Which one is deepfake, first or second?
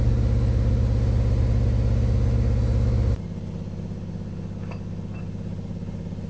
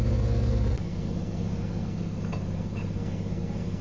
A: second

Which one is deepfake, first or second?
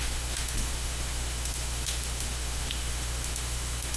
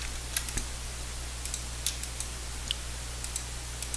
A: first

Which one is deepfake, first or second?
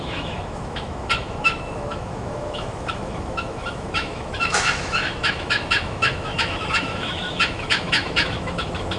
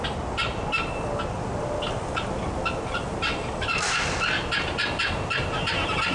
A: first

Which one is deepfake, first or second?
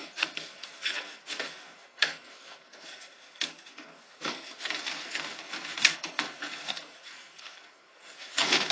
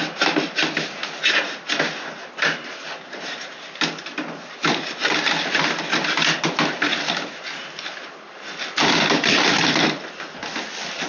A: first